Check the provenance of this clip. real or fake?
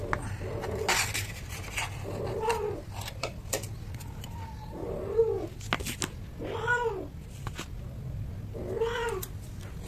real